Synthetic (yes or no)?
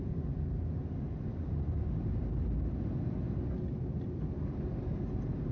no